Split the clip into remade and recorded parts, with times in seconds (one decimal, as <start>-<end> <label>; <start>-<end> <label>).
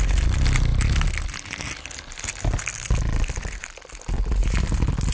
0.0-5.1 recorded